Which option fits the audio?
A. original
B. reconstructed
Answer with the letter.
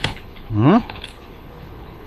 B